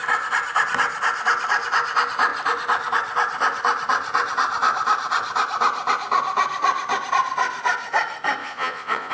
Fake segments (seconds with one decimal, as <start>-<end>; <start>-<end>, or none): 8.4-9.1